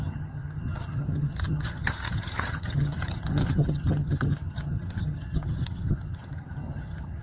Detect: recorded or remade remade